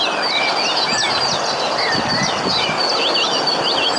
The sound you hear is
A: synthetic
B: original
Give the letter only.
B